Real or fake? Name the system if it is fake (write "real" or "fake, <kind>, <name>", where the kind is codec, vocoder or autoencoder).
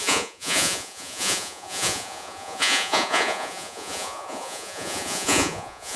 fake, vocoder, Vocos